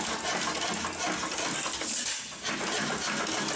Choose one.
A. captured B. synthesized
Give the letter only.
A